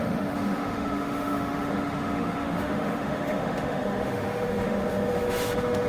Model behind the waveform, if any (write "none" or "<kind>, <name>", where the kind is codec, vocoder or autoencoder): autoencoder, DAC-VAE